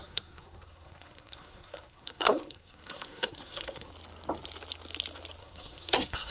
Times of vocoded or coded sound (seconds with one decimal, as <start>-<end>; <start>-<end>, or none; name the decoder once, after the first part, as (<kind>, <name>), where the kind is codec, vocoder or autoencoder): 0.0-3.9 (codec, SNAC); 5.4-6.3